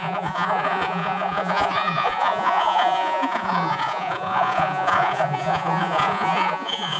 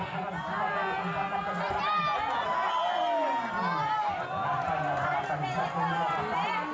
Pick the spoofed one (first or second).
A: first